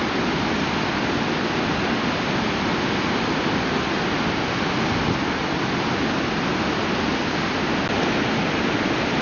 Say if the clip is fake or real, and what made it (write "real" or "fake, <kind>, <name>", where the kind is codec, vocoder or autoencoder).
real